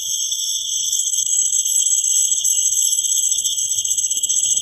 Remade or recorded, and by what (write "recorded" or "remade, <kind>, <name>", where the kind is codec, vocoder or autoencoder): remade, codec, SNAC